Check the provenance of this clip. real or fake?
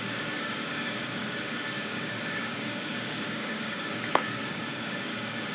fake